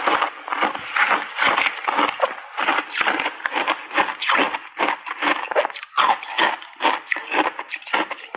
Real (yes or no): yes